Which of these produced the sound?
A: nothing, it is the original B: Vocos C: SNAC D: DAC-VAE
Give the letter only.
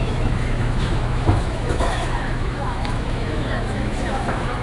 D